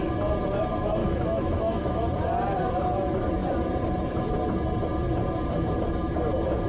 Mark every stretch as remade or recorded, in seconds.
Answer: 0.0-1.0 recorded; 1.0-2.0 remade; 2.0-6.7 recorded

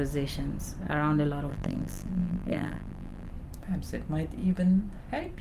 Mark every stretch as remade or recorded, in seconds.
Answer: 0.0-1.5 recorded; 1.5-3.3 remade; 3.3-5.4 recorded

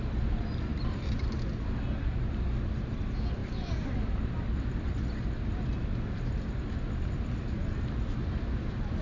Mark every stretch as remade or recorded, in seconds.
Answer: 0.0-0.7 recorded; 0.7-1.4 remade; 1.4-3.4 recorded; 3.4-4.9 remade; 4.9-9.0 recorded

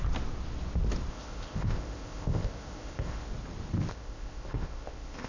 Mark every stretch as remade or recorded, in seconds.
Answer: 0.0-1.1 recorded; 1.1-3.3 remade; 3.3-3.9 recorded; 3.9-5.3 remade